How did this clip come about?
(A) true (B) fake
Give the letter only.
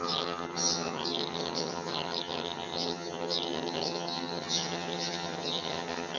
B